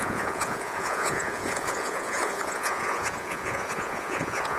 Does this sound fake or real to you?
fake